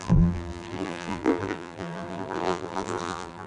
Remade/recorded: remade